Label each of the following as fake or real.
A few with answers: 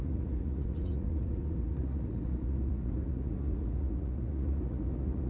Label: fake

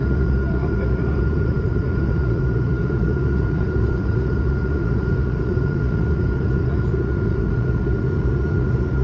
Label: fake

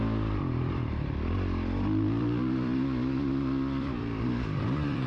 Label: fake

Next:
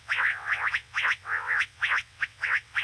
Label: fake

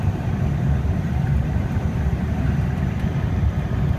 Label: fake